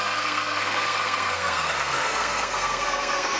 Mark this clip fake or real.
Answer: fake